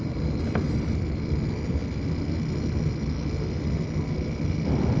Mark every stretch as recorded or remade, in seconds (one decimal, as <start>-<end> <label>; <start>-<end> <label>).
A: 0.0-1.8 remade; 1.8-5.0 recorded